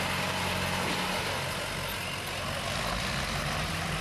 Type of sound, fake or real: real